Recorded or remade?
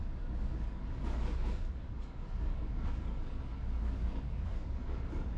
remade